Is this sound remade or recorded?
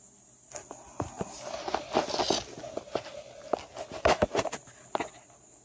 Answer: recorded